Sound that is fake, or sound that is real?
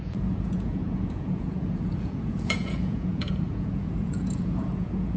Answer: fake